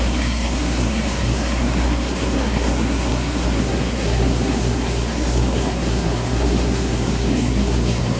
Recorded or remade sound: remade